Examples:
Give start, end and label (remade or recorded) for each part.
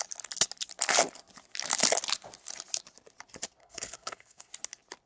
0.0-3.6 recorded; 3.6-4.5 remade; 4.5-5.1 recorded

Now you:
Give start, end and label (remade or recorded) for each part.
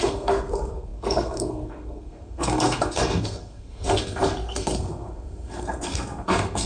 0.0-6.7 remade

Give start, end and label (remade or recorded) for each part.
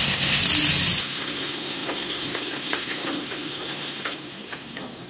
0.0-0.4 remade; 0.4-1.0 recorded; 1.0-5.1 remade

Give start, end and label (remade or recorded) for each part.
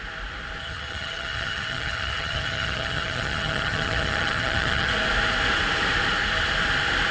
0.0-0.6 recorded; 0.6-4.9 remade; 4.9-7.1 recorded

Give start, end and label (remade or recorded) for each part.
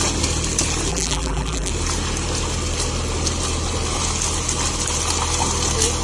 0.0-0.9 recorded; 0.9-1.7 remade; 1.7-6.0 recorded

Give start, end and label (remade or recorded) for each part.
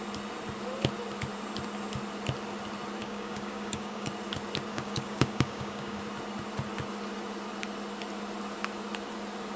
0.0-3.0 recorded; 3.0-4.1 remade; 4.1-4.7 recorded; 4.7-6.0 remade; 6.0-9.6 recorded